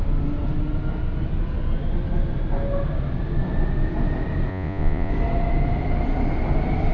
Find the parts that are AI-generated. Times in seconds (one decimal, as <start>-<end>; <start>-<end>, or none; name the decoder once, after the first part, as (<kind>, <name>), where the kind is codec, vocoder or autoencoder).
4.5-5.1 (vocoder, Vocos)